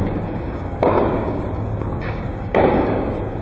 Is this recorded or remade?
remade